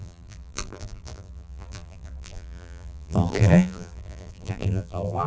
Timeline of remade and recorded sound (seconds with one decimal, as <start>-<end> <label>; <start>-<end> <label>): 0.0-5.3 remade